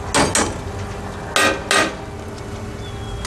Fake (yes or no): no